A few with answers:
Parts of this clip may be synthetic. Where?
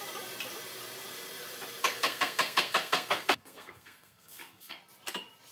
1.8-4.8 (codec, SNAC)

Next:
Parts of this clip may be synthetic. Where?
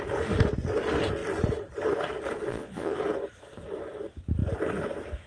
2.5-3.0 (vocoder, Vocos)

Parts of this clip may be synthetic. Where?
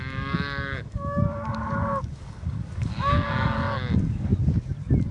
0.0-4.3 (codec, DAC)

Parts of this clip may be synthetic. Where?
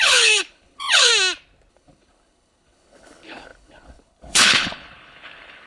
0.0-1.1 (codec, HILCodec); 1.7-5.7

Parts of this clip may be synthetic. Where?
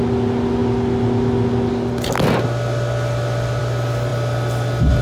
none